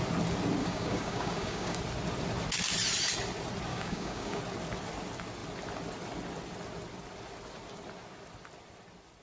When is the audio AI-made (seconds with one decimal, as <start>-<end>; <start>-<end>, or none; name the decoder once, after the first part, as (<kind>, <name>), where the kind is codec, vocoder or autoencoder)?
0.6-1.8 (codec, DAC); 3.7-4.4